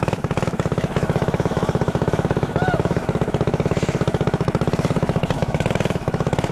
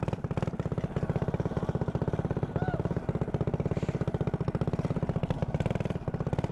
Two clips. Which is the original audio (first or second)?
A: second